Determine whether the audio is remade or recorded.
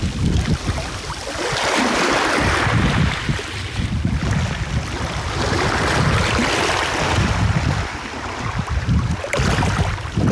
recorded